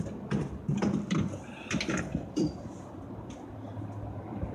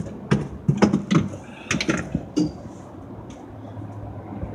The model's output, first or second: first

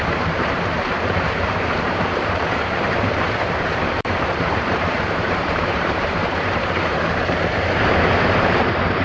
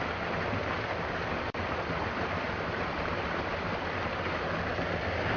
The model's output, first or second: first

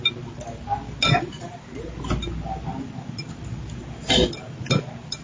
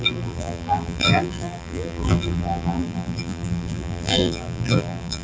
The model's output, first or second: second